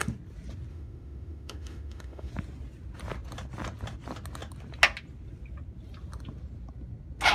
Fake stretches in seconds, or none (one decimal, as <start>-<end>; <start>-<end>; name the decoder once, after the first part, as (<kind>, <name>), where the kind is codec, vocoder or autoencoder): 0.7-2.3 (autoencoder, DAC-VAE)